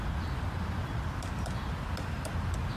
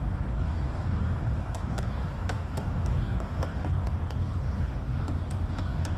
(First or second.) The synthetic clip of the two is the second